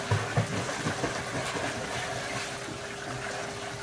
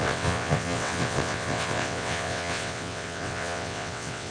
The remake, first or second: second